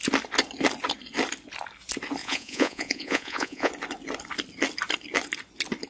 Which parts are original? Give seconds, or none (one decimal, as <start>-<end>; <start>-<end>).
0.0-2.2; 3.7-5.9